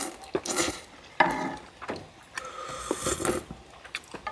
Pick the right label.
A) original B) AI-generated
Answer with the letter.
A